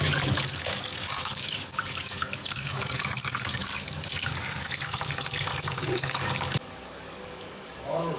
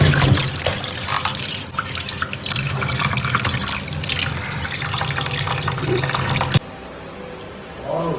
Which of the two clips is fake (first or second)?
first